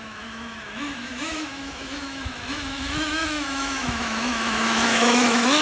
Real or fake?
fake